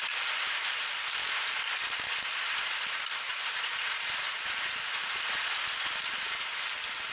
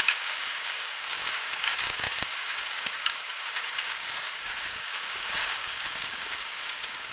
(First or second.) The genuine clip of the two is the first